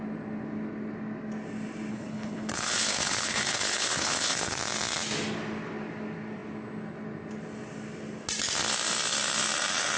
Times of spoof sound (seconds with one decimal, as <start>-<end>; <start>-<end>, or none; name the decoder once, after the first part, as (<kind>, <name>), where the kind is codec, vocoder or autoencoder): 1.9-4.6 (codec, HILCodec)